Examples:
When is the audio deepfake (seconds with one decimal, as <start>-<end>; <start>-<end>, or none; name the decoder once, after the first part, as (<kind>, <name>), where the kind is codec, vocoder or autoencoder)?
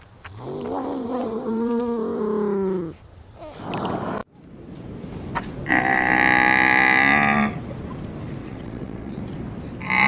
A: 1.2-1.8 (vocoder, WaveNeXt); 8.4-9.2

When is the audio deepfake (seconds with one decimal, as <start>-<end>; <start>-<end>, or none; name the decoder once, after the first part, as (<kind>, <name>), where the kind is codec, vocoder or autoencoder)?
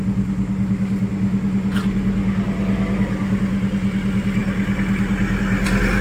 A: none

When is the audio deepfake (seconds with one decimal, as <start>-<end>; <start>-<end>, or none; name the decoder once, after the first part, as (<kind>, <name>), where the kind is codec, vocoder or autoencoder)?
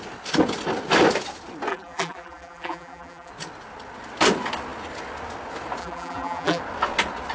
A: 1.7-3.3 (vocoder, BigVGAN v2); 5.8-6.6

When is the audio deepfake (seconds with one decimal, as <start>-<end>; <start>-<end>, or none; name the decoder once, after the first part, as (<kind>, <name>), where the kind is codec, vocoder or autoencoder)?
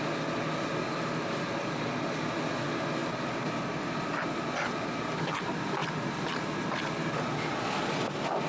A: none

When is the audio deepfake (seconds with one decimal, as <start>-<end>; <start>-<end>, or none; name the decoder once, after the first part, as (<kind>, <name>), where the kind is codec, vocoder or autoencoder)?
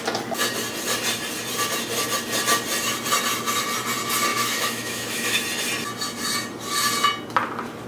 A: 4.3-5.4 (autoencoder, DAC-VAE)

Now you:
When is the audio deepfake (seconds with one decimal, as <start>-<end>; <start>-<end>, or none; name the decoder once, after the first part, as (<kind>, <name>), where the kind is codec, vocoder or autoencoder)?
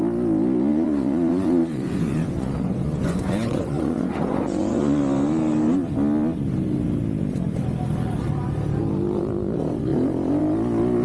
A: 0.7-5.0 (vocoder, Vocos)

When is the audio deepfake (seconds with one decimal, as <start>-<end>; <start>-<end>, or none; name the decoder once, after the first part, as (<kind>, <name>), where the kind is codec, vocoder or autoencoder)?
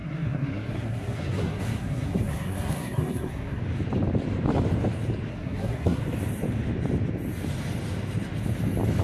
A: 0.0-3.6 (codec, SNAC); 5.3-6.0